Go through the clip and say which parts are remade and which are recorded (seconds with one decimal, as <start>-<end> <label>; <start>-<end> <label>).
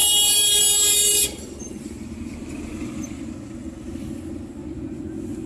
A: 0.0-5.5 recorded